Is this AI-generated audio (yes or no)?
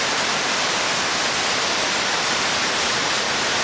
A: no